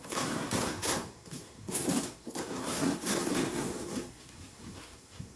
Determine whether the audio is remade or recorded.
remade